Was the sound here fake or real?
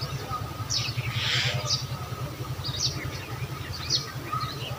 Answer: real